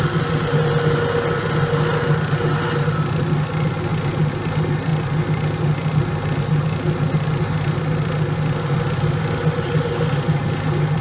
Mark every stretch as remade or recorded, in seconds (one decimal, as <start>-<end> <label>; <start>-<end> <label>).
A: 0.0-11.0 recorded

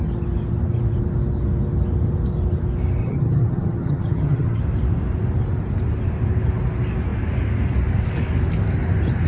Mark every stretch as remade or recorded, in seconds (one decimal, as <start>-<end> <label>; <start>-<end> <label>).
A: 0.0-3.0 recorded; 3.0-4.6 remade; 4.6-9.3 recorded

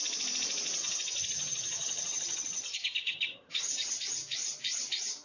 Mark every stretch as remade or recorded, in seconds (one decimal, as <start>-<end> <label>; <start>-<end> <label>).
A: 0.0-0.8 recorded; 0.8-3.9 remade; 3.9-5.2 recorded

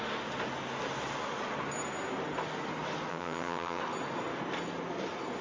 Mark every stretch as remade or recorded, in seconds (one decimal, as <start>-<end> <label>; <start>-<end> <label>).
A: 0.0-3.1 recorded; 3.1-3.8 remade; 3.8-5.4 recorded